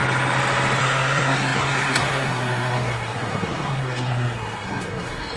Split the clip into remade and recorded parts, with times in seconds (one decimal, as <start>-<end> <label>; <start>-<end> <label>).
0.0-0.8 recorded; 0.8-5.4 remade